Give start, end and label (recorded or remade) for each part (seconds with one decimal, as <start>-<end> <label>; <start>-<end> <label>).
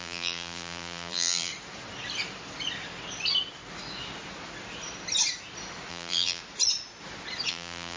0.0-1.5 remade; 1.5-5.9 recorded; 5.9-6.4 remade; 6.4-7.5 recorded; 7.5-8.0 remade